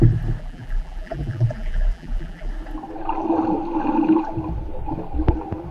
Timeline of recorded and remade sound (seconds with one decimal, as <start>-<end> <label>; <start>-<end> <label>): 0.0-0.4 recorded; 0.4-2.5 remade; 2.5-5.7 recorded